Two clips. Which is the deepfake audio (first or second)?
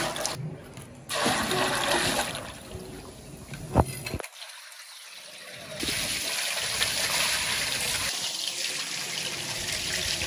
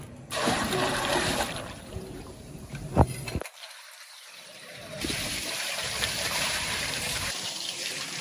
second